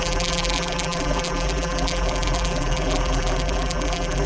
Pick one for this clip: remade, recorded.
remade